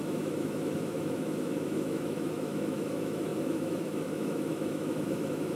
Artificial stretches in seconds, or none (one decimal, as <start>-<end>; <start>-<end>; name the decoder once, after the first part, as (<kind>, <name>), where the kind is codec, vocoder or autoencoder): 0.0-5.6 (autoencoder, DAC-VAE)